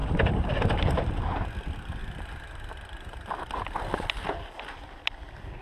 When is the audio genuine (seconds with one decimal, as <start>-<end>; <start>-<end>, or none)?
0.9-5.6